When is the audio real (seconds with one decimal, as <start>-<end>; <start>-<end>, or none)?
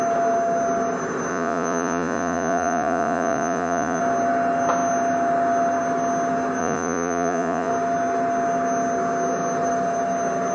0.0-1.3; 4.0-6.6; 7.7-10.5